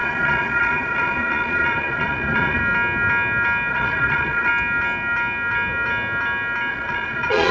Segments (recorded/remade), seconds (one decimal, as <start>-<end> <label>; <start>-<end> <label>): 0.0-2.6 remade; 2.6-3.7 recorded; 3.7-4.5 remade; 4.5-6.7 recorded; 6.7-7.5 remade